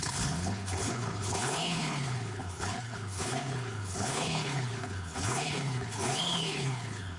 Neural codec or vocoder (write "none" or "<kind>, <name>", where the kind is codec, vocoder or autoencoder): codec, HILCodec